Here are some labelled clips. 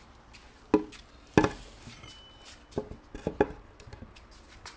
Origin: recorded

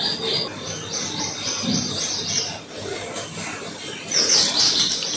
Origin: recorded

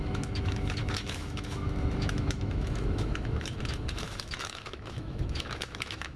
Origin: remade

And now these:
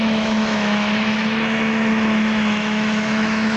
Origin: remade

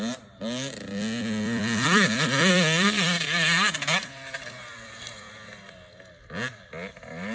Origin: remade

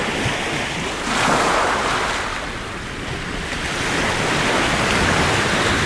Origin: recorded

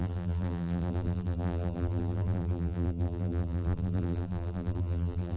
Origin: remade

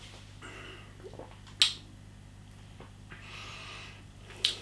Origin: recorded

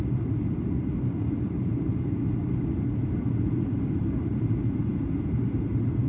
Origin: remade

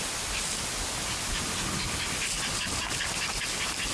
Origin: recorded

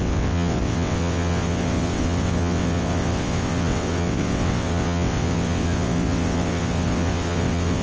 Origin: remade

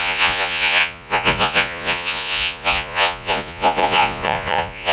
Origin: remade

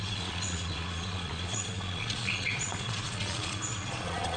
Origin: remade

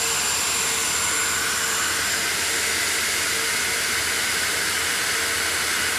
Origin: recorded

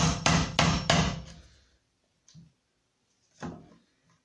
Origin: recorded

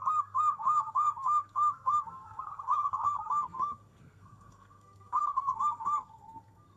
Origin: remade